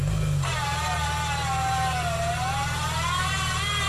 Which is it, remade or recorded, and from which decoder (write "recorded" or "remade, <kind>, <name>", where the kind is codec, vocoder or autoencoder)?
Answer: recorded